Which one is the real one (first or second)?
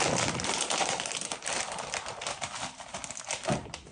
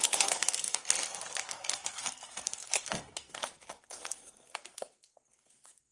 first